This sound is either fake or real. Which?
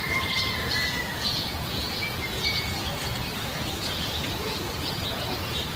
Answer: fake